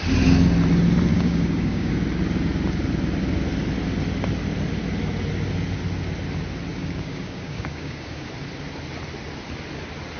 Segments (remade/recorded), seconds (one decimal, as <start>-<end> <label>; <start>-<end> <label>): 0.0-1.1 recorded; 1.1-1.9 remade; 1.9-6.7 recorded; 6.7-8.3 remade; 8.3-10.2 recorded